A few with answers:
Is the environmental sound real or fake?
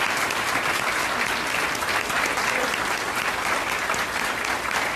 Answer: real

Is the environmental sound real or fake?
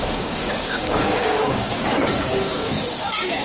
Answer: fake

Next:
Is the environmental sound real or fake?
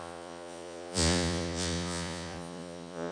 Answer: fake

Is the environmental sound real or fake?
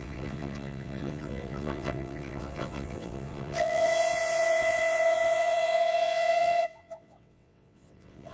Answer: fake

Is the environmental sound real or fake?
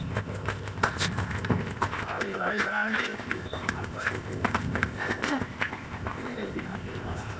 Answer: fake